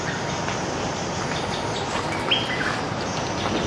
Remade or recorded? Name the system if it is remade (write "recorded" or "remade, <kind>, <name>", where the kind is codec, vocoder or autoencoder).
recorded